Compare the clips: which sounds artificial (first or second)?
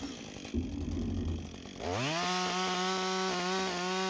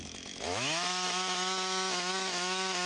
second